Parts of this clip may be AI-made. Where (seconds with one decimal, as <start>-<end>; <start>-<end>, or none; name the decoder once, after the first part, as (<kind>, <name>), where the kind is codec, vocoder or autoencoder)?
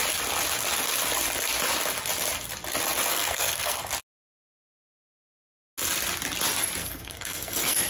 3.1-3.9 (codec, SNAC); 6.8-7.9